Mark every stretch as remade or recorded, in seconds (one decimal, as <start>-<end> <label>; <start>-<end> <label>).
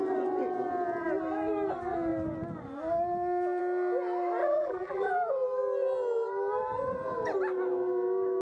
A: 0.0-4.4 recorded; 4.4-5.1 remade; 5.1-8.4 recorded